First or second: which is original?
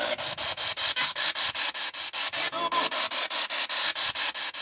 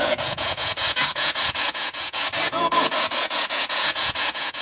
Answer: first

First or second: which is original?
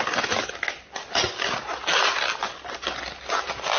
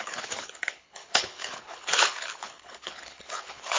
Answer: first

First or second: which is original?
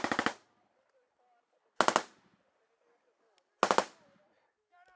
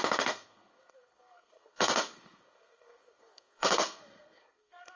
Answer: first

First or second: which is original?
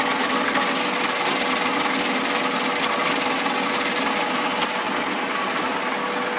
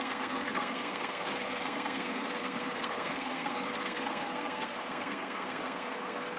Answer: first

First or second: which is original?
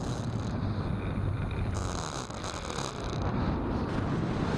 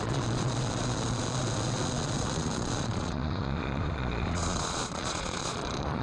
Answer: first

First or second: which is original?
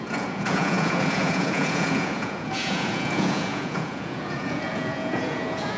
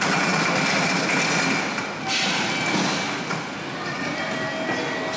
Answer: second